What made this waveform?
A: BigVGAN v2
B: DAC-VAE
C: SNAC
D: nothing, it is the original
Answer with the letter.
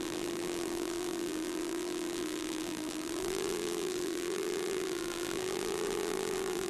A